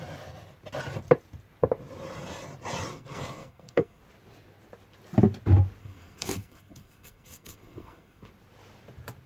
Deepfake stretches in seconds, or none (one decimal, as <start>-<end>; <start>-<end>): 2.9-4.0; 5.8-8.3